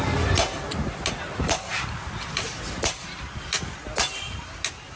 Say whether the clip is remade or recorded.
recorded